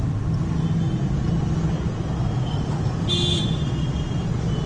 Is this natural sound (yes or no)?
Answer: yes